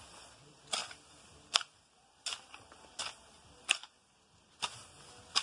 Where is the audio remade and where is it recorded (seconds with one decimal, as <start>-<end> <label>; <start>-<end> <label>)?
0.0-5.4 recorded